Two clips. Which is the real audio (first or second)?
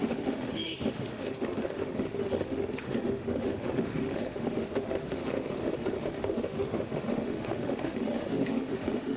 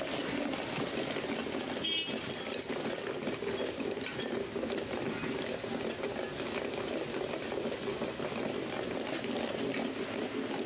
second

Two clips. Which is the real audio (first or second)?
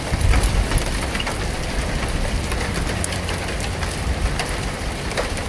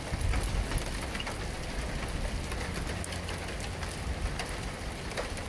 second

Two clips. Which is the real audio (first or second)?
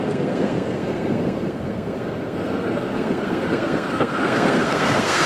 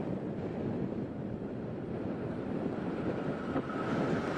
second